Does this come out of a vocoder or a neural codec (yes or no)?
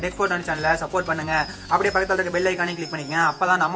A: yes